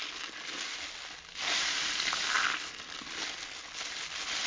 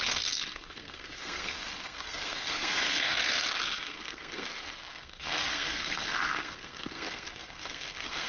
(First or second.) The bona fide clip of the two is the first